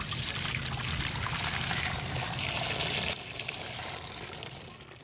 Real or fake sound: real